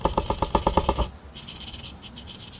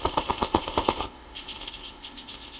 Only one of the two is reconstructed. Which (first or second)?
second